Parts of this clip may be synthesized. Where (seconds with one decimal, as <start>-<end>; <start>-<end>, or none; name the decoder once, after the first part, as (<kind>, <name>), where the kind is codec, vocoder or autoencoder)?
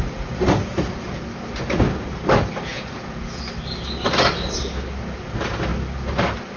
2.7-3.4 (vocoder, Vocos)